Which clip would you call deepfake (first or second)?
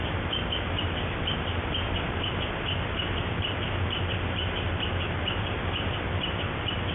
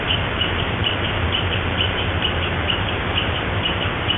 second